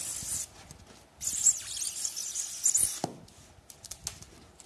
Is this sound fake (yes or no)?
no